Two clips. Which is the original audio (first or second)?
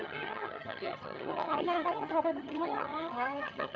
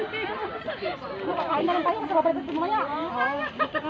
second